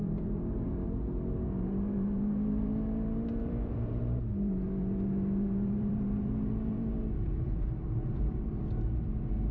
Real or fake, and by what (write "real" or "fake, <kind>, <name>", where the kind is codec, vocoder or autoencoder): fake, vocoder, BigVGAN v2